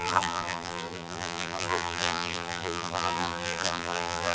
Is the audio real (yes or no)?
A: no